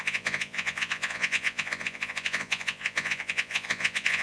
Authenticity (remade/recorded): remade